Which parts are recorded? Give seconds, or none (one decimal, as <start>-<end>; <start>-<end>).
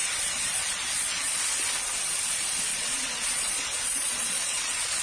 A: 1.4-2.7